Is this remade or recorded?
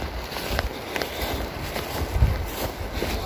recorded